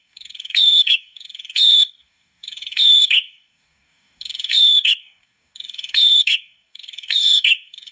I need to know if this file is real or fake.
fake